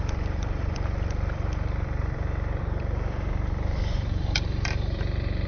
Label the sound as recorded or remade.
remade